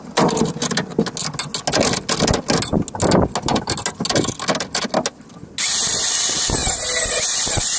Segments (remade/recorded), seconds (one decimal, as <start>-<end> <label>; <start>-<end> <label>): 0.0-7.8 recorded